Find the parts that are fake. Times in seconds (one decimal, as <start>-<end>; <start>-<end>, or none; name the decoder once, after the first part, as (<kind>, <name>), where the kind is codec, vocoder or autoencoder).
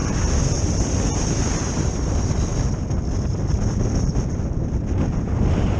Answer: 0.0-2.2 (vocoder, BigVGAN v2)